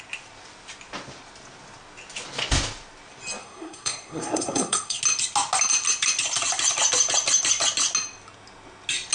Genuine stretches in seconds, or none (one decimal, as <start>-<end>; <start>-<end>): 0.0-3.4; 5.0-9.1